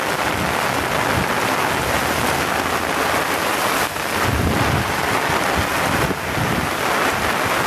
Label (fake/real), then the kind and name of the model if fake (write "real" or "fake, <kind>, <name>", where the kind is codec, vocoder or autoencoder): real